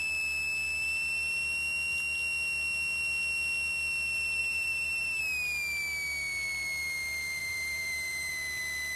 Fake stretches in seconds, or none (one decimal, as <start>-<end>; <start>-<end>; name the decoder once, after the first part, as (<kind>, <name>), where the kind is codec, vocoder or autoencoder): 4.4-5.2 (vocoder, BigVGAN v2); 7.4-8.3